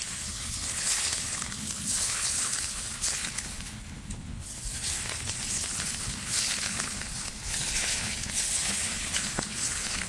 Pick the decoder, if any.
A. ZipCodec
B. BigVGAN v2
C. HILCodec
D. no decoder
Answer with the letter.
C